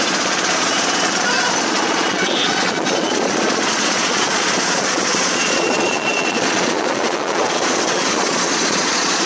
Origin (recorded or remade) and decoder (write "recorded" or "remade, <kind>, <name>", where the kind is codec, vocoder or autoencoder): remade, vocoder, Vocos